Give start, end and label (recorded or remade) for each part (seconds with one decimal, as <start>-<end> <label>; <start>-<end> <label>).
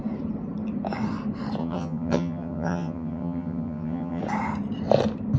0.0-1.6 recorded; 1.6-4.2 remade; 4.2-5.4 recorded